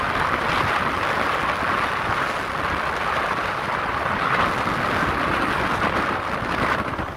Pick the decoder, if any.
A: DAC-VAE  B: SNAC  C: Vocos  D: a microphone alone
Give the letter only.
D